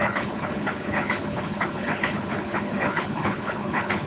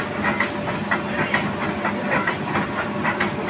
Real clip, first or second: second